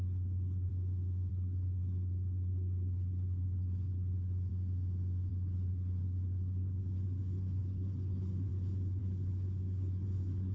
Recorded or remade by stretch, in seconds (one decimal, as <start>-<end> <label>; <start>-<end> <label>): 0.0-0.7 remade; 0.7-1.3 recorded; 1.3-4.5 remade; 4.5-5.3 recorded; 5.3-10.5 remade